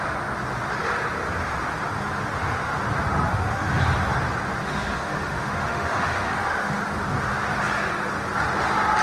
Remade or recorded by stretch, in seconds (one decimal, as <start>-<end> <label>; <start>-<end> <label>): 0.0-3.3 recorded; 3.3-3.8 remade; 3.8-4.6 recorded; 4.6-6.8 remade; 6.8-9.0 recorded